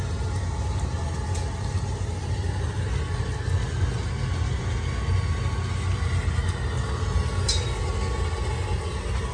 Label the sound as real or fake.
real